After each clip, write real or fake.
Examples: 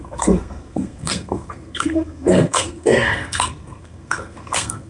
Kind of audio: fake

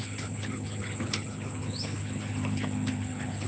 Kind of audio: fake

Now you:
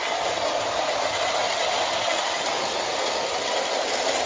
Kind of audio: real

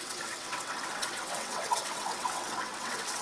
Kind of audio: fake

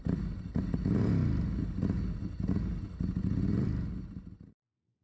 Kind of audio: real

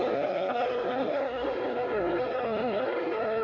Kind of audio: fake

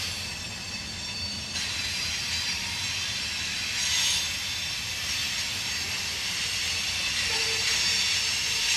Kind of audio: real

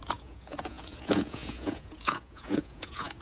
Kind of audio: fake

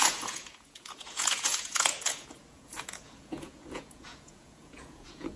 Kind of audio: fake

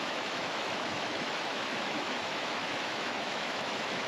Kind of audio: fake